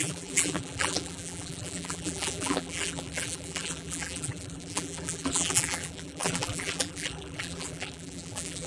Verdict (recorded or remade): remade